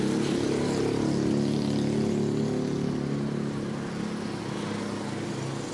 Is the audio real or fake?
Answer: real